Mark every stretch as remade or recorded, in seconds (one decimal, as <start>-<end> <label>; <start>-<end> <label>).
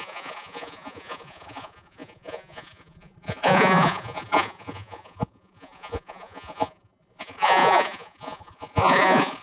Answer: 0.0-9.4 remade